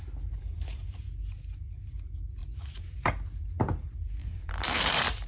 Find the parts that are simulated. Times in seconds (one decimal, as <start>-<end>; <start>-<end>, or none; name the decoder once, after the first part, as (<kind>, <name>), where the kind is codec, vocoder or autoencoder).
2.4-3.1 (vocoder, BigVGAN v2); 4.2-5.3